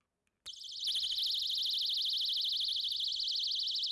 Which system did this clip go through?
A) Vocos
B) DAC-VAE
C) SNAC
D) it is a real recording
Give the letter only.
D